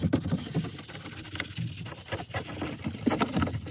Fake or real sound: real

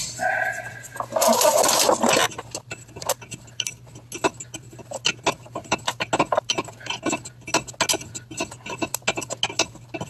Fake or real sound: real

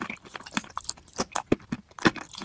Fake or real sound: real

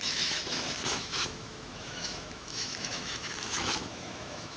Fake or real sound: fake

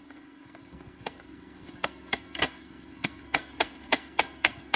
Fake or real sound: fake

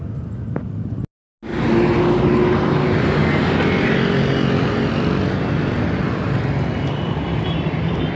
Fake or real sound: real